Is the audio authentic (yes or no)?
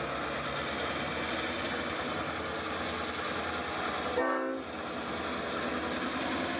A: yes